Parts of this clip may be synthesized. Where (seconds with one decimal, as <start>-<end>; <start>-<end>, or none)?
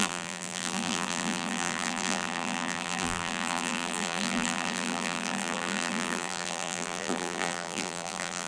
0.0-8.5